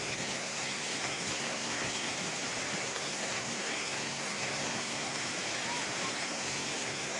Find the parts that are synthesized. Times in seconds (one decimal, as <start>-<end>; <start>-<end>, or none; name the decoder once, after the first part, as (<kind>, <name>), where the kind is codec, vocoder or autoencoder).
0.0-2.1 (codec, SNAC); 2.8-5.3; 6.1-7.2

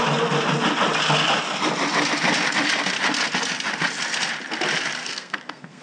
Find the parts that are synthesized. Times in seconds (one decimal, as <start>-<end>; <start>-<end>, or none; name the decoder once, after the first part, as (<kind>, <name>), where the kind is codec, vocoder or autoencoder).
5.0-5.8 (codec, SNAC)

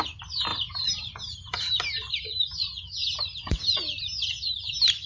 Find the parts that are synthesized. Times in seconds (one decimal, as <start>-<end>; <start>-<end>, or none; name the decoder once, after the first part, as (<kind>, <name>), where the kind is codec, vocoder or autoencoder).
none

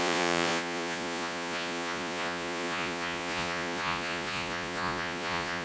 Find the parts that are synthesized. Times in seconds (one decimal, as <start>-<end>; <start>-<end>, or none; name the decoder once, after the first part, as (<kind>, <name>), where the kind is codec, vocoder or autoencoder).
0.0-5.6 (vocoder, Vocos)

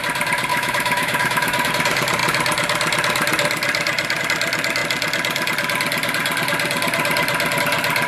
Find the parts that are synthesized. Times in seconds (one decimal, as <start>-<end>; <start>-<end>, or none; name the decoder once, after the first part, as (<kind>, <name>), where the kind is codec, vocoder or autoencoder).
0.5-1.7 (autoencoder, DAC-VAE)

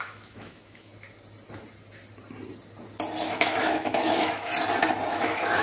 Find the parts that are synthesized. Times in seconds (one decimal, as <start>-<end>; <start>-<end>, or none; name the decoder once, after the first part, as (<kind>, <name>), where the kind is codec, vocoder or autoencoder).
0.0-0.9 (autoencoder, DAC-VAE); 3.3-4.5; 5.1-5.6